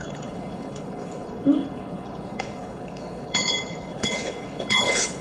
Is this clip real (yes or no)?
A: no